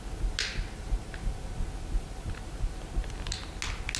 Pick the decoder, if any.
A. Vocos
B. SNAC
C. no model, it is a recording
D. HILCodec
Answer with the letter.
C